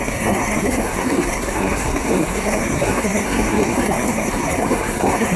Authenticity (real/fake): fake